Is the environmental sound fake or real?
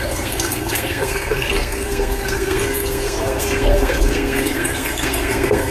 fake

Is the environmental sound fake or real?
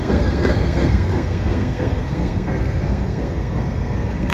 fake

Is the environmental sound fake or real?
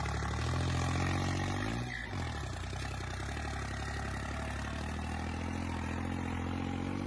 real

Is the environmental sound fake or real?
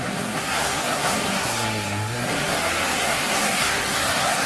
fake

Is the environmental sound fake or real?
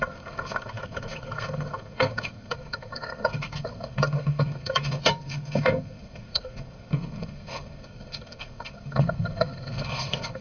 fake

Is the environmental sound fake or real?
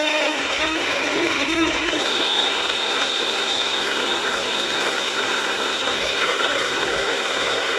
fake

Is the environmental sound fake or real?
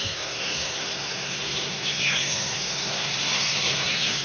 fake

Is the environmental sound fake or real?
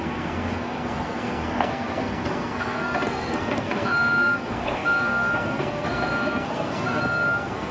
fake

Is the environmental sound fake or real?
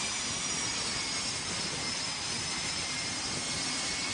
real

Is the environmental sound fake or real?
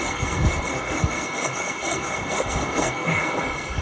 fake